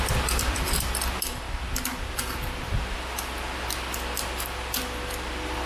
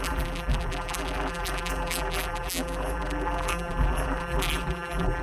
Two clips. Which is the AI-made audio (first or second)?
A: second